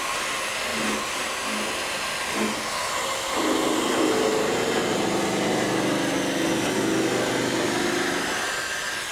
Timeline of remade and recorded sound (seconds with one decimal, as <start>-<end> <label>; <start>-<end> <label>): 0.0-9.1 recorded